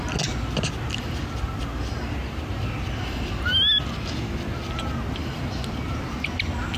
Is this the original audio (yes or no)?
yes